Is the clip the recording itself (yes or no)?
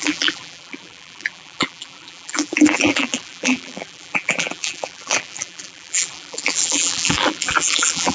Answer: no